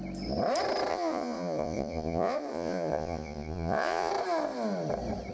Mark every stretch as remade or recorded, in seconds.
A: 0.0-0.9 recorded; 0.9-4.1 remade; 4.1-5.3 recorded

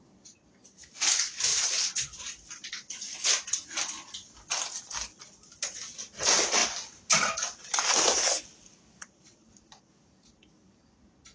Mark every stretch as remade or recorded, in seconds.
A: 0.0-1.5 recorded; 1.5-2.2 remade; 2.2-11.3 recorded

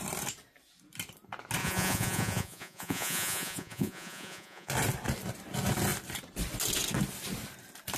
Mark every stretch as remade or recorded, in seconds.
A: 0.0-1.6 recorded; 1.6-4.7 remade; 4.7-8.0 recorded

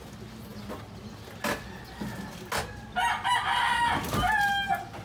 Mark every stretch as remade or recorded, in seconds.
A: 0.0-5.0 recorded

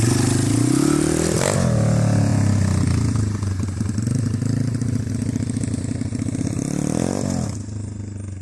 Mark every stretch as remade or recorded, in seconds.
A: 0.0-8.4 recorded

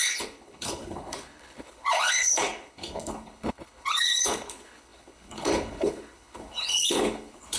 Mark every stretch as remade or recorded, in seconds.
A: 0.0-7.6 remade

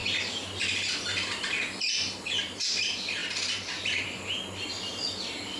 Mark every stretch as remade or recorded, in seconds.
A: 0.0-5.6 recorded